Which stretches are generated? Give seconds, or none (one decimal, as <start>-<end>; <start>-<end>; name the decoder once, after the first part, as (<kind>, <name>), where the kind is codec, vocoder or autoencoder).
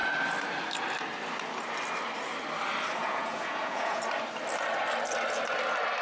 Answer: 3.0-4.0 (vocoder, Vocos)